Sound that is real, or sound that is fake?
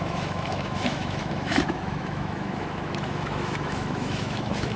fake